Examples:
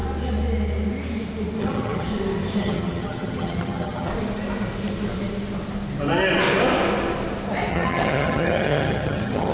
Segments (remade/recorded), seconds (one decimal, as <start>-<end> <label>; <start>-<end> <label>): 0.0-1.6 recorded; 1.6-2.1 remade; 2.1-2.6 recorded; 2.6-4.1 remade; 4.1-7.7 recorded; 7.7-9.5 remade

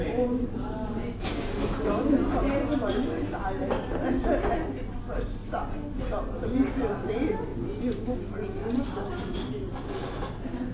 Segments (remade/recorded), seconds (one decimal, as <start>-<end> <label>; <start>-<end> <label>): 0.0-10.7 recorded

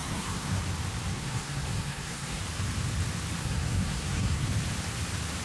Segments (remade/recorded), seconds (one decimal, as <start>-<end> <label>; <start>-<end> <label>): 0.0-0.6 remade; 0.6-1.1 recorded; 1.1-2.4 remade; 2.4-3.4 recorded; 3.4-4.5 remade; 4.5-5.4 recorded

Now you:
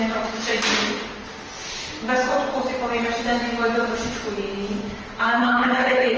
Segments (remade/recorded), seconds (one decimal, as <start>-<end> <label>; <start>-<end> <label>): 0.0-5.4 recorded; 5.4-6.2 remade